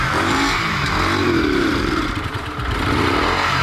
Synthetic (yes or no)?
yes